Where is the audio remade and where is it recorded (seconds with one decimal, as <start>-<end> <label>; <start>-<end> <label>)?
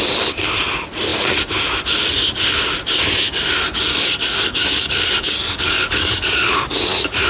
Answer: 0.0-3.9 recorded; 3.9-7.3 remade